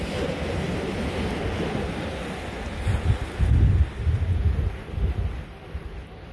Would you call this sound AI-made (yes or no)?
no